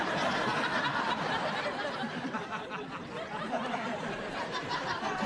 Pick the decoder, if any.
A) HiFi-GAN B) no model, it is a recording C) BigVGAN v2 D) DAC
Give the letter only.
C